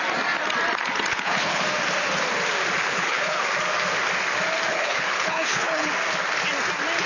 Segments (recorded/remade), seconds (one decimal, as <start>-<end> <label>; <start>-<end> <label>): 0.0-1.1 recorded; 1.1-1.6 remade; 1.6-2.9 recorded; 2.9-3.4 remade; 3.4-4.7 recorded; 4.7-5.9 remade; 5.9-7.1 recorded